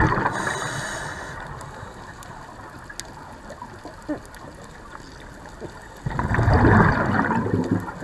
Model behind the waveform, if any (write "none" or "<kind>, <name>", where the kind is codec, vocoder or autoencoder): none